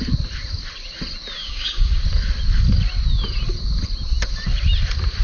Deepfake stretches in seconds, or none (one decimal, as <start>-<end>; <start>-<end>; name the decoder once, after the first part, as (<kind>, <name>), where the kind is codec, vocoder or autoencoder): 1.4-2.0 (codec, DAC)